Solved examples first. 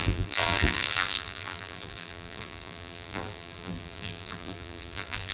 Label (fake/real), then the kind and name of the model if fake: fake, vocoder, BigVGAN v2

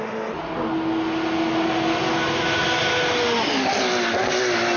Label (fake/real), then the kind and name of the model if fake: real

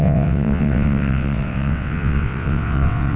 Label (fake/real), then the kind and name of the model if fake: fake, vocoder, WaveNeXt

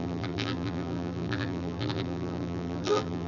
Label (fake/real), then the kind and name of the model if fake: fake, vocoder, BigVGAN v2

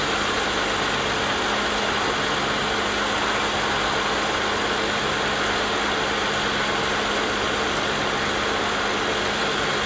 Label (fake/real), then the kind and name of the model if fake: real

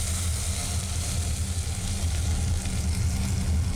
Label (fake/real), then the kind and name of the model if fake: real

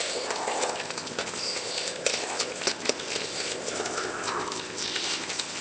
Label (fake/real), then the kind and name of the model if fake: fake, codec, ZipCodec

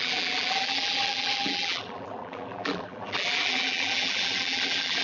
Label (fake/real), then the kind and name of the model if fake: fake, vocoder, BigVGAN v2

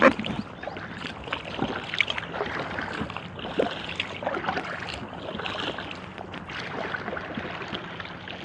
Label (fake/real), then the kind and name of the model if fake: real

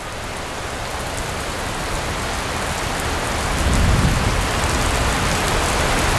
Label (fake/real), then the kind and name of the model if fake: real